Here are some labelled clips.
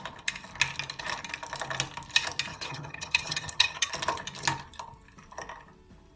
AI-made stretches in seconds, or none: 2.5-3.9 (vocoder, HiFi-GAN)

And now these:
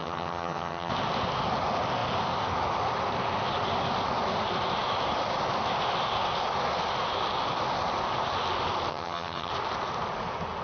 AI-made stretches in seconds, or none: 0.0-0.9 (vocoder, HiFi-GAN); 8.9-9.5